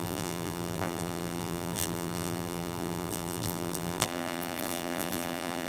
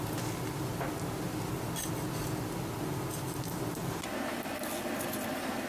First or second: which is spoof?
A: first